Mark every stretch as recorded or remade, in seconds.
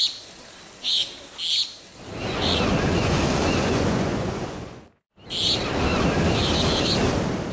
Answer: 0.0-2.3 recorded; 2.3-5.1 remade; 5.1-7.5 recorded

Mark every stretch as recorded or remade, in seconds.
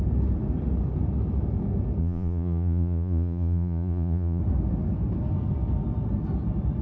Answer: 0.0-2.0 recorded; 2.0-4.4 remade; 4.4-6.8 recorded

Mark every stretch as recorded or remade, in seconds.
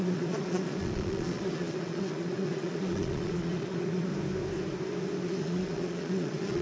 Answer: 0.0-4.1 remade; 4.1-5.2 recorded; 5.2-6.6 remade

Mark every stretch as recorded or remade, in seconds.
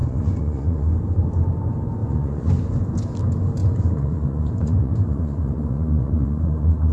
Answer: 0.0-0.9 remade; 0.9-2.0 recorded; 2.0-2.5 remade; 2.5-3.6 recorded; 3.6-6.9 remade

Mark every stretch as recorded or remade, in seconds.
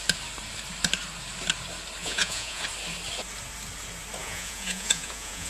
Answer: 0.0-2.0 recorded; 2.0-2.6 remade; 2.6-4.2 recorded; 4.2-5.5 remade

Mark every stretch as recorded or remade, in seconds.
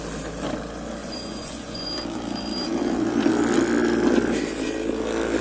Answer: 0.0-1.0 recorded; 1.0-1.9 remade; 1.9-5.4 recorded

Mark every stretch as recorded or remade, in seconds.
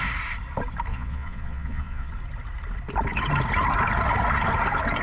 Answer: 0.0-0.9 recorded; 0.9-2.1 remade; 2.1-5.0 recorded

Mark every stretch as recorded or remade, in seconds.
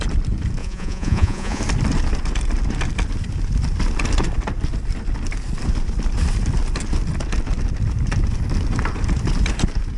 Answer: 0.0-0.6 recorded; 0.6-1.6 remade; 1.6-10.0 recorded